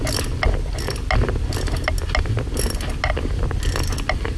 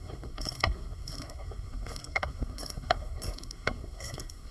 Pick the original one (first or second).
first